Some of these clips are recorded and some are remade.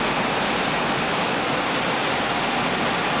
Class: recorded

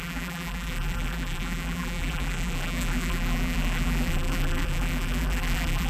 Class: remade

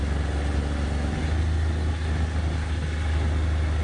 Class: recorded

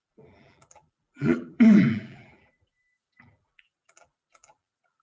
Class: remade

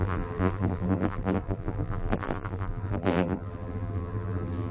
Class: remade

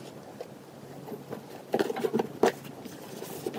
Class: recorded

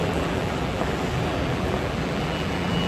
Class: remade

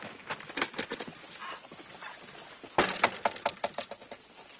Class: recorded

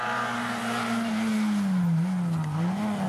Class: recorded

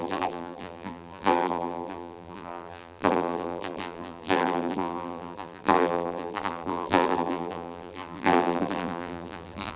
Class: remade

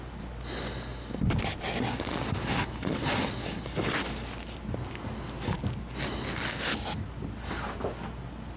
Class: recorded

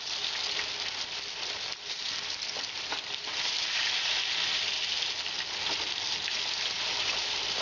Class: remade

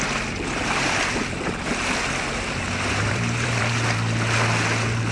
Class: remade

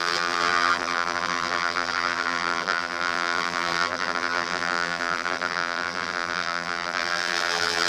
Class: remade